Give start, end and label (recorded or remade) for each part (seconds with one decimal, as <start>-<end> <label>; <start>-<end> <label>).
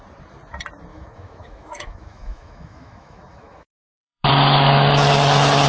0.0-0.9 recorded; 0.9-4.3 remade; 4.3-5.7 recorded